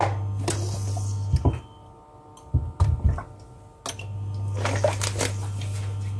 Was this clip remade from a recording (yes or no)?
no